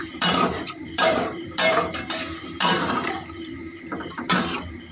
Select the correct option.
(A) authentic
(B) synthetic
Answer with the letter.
B